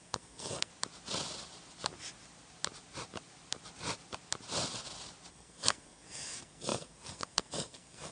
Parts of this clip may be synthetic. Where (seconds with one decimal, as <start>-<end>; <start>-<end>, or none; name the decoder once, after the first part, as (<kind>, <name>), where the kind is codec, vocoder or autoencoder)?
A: 0.0-0.7 (codec, SNAC); 5.3-8.1